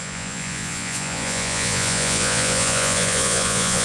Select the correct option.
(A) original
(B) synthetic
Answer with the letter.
B